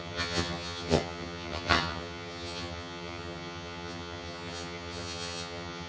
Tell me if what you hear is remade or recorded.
remade